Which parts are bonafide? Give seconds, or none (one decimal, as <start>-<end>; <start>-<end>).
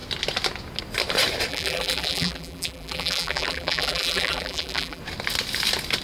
0.0-1.5; 5.0-6.0